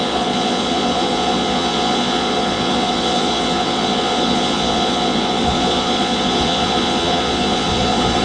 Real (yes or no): no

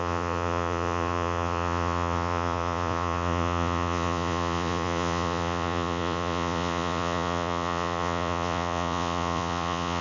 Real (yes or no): no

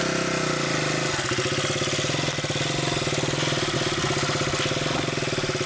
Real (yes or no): yes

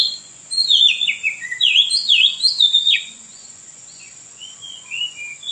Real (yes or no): no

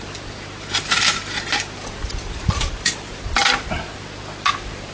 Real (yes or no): yes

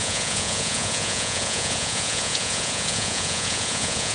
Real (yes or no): no